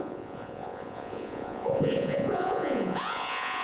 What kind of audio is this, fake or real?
fake